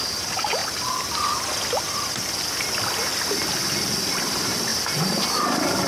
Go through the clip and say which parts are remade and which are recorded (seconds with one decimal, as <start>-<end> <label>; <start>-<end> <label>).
0.0-0.6 remade; 0.6-4.1 recorded; 4.1-5.9 remade